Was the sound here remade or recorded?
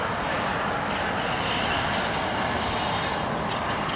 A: recorded